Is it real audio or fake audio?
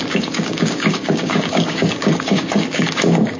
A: fake